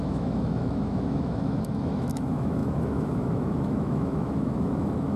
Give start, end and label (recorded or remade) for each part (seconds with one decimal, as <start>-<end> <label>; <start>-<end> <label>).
0.0-5.2 remade